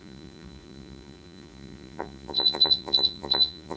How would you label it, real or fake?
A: fake